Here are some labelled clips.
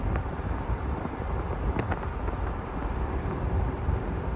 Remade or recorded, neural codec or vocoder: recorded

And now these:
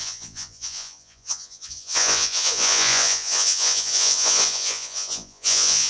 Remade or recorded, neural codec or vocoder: remade, vocoder, Vocos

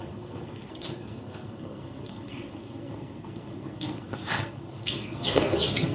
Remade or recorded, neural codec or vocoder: remade, codec, SNAC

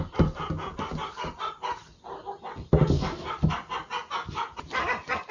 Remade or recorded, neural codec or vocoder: recorded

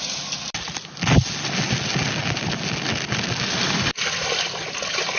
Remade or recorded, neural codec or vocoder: recorded